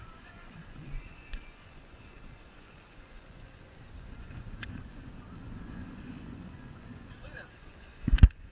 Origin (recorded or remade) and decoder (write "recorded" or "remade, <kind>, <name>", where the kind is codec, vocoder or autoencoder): remade, vocoder, Vocos